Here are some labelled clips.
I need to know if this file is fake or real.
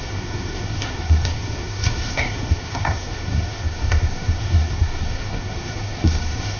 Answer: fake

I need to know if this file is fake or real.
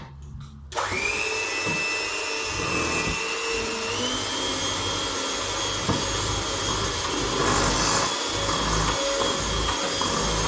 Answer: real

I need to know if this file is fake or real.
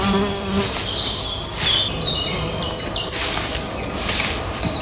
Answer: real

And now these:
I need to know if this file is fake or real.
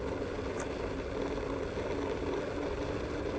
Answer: real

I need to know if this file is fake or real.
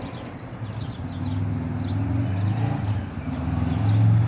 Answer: real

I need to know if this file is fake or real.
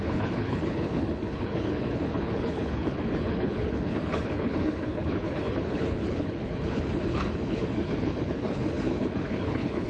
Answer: fake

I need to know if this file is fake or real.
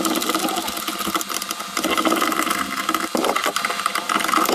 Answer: real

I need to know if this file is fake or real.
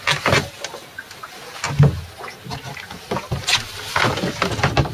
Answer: real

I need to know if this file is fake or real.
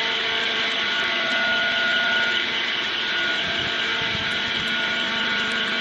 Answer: fake